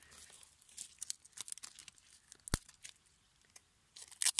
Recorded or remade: recorded